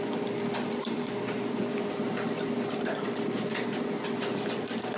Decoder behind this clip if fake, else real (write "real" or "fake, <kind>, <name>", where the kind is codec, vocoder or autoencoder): real